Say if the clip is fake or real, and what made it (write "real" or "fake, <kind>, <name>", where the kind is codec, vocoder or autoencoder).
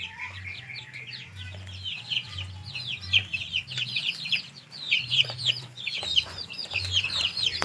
fake, vocoder, Vocos